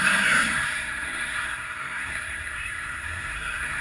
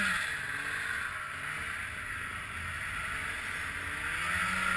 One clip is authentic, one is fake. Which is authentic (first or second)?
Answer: second